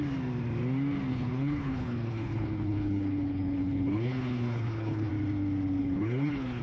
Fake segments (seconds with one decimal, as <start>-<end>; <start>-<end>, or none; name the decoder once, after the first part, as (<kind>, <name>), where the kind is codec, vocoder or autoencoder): 1.1-5.1 (codec, HILCodec); 5.8-6.6